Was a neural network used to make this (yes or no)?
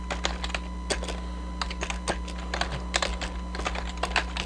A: no